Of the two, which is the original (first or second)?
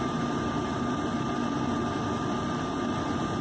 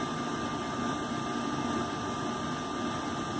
second